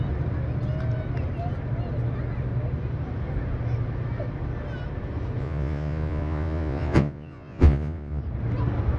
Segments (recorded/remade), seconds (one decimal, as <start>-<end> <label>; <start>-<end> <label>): 0.0-5.4 recorded; 5.4-8.2 remade; 8.2-9.0 recorded